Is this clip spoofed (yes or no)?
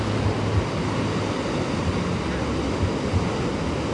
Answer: no